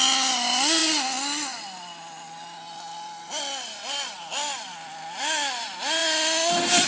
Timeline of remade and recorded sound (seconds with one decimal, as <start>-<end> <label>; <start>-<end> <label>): 0.0-6.9 recorded